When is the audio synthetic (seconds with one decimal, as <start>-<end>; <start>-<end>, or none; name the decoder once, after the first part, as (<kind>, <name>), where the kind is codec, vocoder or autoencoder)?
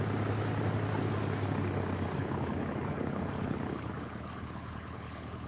2.2-5.5 (codec, HILCodec)